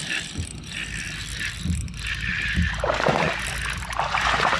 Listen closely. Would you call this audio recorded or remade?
recorded